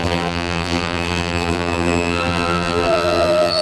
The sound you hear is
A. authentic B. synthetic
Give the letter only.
B